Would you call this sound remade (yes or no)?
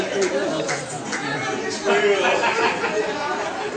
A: no